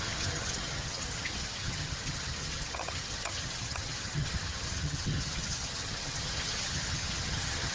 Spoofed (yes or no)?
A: yes